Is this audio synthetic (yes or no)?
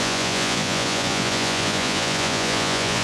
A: yes